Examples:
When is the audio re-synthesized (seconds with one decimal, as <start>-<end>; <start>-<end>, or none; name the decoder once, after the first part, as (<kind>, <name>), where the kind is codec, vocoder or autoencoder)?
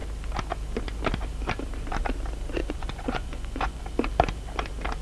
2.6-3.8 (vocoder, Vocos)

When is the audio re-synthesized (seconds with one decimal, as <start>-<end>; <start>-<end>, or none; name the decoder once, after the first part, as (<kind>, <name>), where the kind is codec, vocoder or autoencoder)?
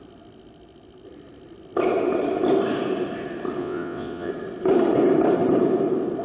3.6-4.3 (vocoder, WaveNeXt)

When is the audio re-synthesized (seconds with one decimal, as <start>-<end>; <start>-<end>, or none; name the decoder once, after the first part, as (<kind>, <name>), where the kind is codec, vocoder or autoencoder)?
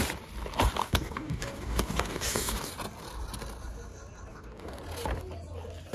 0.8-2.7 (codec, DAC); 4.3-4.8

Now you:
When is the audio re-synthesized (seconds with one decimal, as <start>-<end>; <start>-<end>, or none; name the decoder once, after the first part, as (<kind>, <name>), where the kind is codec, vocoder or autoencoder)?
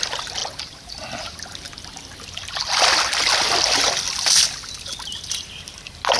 none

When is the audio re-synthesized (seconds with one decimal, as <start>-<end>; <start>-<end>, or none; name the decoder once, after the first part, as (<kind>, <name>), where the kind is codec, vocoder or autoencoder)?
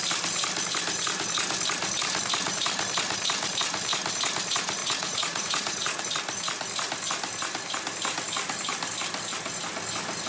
4.8-6.0 (vocoder, Vocos)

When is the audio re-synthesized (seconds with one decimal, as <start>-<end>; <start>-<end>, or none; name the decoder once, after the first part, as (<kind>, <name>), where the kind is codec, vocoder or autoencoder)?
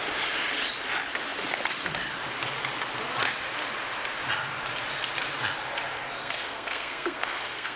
6.2-7.8 (codec, SNAC)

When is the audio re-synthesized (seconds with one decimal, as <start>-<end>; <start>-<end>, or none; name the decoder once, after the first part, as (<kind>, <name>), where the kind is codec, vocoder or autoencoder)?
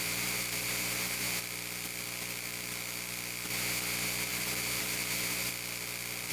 0.0-1.4 (vocoder, BigVGAN v2); 3.5-5.5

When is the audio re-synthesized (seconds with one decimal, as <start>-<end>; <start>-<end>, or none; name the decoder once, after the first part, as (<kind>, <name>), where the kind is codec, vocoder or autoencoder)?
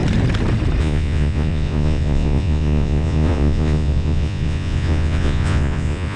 0.8-6.2 (vocoder, Vocos)